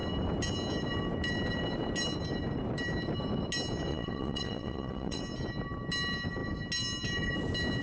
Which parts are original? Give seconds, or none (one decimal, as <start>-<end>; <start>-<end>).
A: 0.0-3.9; 5.2-7.8